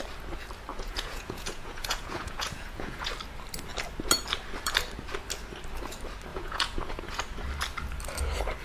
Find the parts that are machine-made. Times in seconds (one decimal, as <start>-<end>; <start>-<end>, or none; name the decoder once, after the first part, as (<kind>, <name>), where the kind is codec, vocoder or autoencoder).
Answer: 0.7-3.1 (vocoder, Vocos); 6.3-7.2

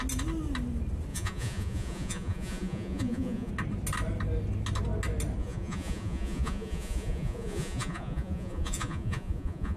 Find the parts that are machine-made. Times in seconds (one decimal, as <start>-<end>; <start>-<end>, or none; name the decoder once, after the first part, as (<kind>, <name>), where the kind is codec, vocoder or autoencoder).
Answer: 1.1-3.5 (vocoder, Vocos); 5.4-9.8